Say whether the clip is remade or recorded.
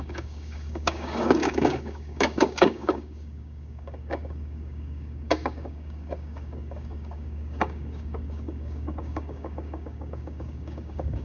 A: remade